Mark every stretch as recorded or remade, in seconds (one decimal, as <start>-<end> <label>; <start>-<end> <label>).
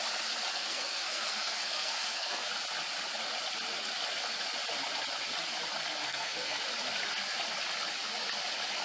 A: 0.0-0.5 recorded; 0.5-2.5 remade; 2.5-6.0 recorded; 6.0-6.6 remade; 6.6-8.8 recorded